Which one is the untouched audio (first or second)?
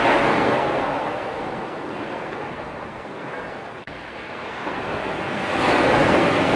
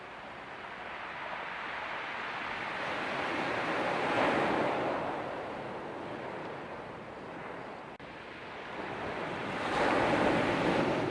second